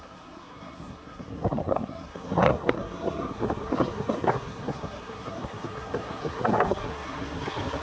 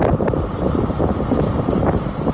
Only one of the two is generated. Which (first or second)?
first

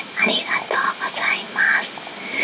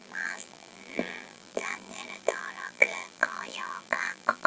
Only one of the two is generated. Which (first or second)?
second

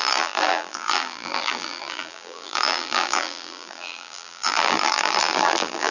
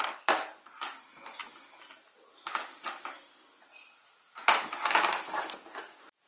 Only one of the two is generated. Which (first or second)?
first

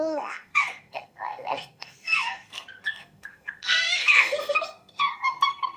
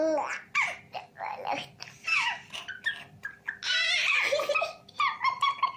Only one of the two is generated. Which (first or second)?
first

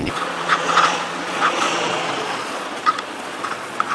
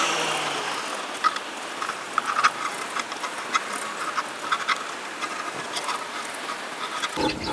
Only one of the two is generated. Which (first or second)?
first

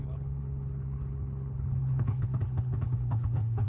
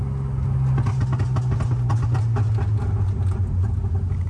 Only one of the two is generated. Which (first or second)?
first